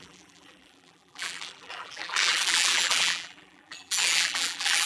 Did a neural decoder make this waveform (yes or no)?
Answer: yes